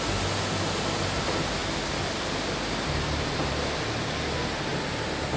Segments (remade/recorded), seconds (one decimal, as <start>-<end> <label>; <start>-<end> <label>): 0.0-5.4 recorded